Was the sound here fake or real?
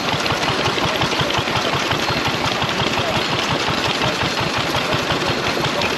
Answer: real